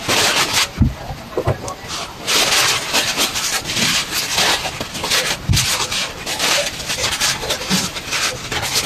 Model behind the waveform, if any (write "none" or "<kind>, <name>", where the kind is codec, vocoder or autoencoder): none